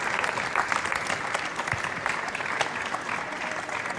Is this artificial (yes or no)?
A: no